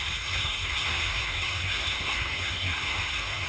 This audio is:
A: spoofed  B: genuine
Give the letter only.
A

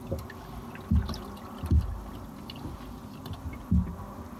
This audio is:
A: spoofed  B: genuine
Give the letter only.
B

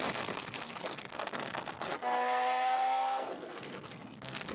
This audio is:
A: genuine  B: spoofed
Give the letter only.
B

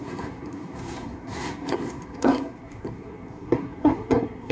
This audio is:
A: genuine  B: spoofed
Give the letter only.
B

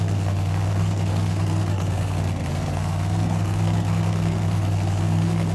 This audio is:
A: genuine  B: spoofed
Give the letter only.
B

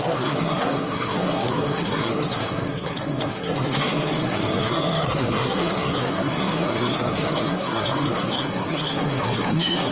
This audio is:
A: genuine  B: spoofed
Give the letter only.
B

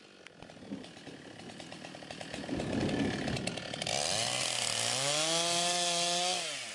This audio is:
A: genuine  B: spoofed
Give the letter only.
A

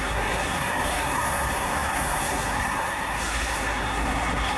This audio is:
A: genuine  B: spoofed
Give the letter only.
B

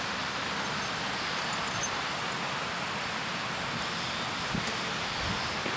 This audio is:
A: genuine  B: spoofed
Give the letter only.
A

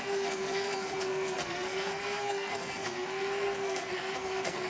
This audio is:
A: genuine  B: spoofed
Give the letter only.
B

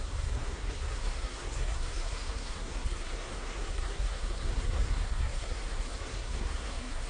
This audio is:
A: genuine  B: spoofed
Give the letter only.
B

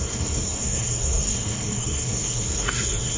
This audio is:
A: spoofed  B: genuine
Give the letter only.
A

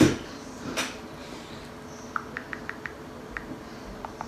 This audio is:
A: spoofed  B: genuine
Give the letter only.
B